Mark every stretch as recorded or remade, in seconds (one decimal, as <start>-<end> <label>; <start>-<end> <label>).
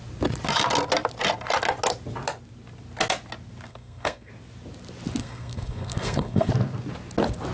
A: 0.0-3.7 recorded; 3.7-4.3 remade; 4.3-5.2 recorded; 5.2-6.5 remade; 6.5-7.5 recorded